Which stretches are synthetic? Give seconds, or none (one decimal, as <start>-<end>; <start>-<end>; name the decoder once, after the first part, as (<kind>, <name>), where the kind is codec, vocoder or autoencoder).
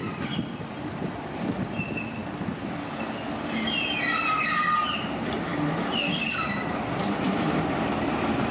none